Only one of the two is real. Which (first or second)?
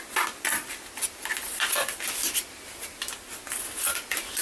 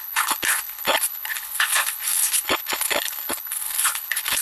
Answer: first